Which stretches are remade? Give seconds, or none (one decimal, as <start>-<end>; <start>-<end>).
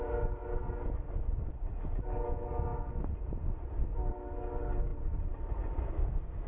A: none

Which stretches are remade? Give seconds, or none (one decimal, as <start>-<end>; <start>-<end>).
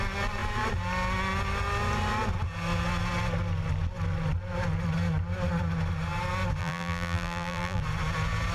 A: 6.6-7.8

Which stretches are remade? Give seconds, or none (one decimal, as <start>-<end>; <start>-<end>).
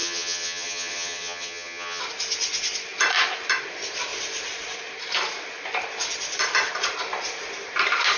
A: 0.0-2.0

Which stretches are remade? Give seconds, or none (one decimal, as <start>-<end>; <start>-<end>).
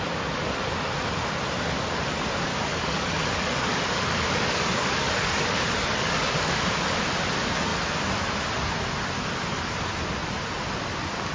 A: 2.5-6.5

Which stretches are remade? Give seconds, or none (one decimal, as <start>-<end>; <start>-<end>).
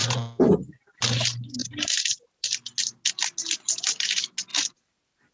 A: 0.0-1.0; 1.6-2.2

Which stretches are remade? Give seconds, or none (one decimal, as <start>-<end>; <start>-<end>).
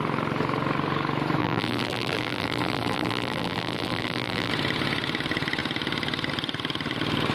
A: 1.4-4.5